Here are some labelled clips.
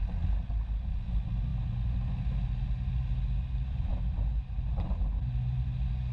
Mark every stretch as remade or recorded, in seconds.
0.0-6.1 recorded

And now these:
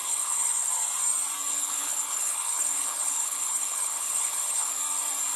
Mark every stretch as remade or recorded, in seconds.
0.0-0.7 remade; 0.7-1.5 recorded; 1.5-4.7 remade; 4.7-5.4 recorded